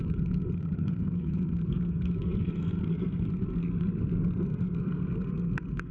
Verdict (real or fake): fake